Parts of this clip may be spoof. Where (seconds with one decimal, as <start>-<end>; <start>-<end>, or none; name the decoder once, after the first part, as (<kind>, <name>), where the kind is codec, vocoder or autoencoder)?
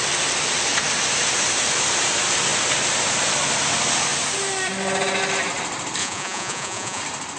6.0-7.0 (vocoder, Vocos)